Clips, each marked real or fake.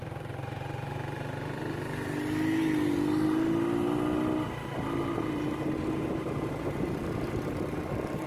real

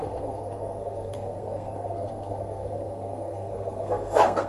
fake